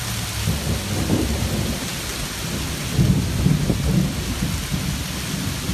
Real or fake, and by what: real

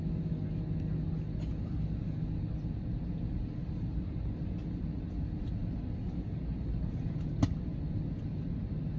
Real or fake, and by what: real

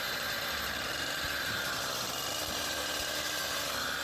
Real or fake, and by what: fake, vocoder, BigVGAN v2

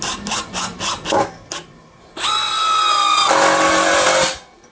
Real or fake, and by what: real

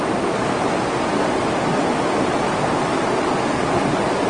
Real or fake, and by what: real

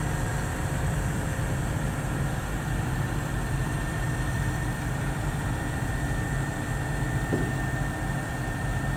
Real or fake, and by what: fake, vocoder, BigVGAN v2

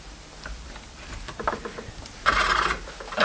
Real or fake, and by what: fake, vocoder, BigVGAN v2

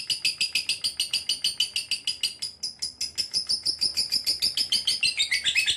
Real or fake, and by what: real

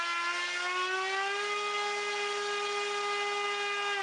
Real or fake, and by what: real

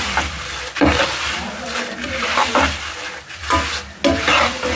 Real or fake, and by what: real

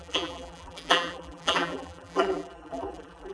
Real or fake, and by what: fake, vocoder, BigVGAN v2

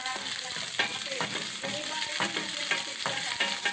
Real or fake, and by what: real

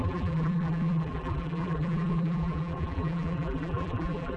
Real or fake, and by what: fake, vocoder, BigVGAN v2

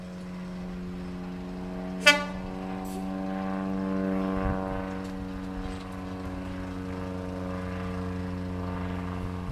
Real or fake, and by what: real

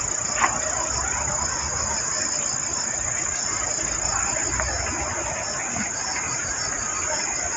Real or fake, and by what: real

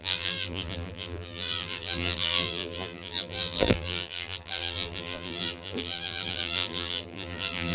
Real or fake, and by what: fake, vocoder, BigVGAN v2